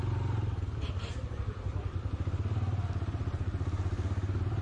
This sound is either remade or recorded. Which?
recorded